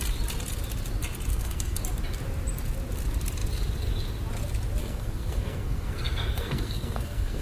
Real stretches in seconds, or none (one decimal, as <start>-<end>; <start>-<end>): 0.0-1.3; 1.8-4.8